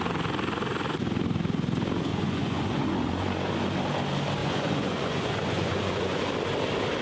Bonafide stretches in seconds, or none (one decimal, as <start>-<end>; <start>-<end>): 0.0-2.1; 3.5-4.4; 6.2-7.0